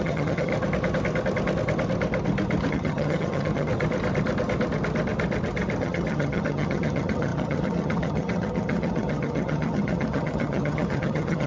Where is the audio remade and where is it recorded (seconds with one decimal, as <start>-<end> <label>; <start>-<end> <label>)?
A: 0.0-0.5 remade; 0.5-2.7 recorded; 2.7-3.7 remade; 3.7-5.8 recorded; 5.8-11.5 remade